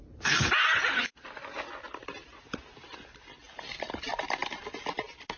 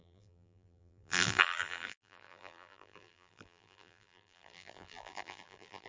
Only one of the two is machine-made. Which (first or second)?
second